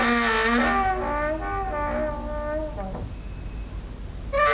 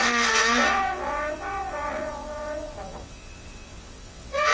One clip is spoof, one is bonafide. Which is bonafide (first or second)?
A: first